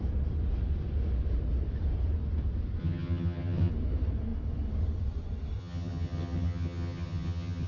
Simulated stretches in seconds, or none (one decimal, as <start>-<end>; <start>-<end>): 2.8-3.7; 5.6-7.7